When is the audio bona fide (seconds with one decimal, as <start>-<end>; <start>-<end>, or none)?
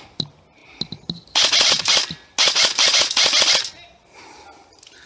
0.0-5.1